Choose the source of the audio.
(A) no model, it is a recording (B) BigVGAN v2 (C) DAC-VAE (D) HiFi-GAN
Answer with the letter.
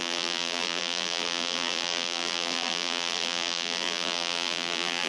B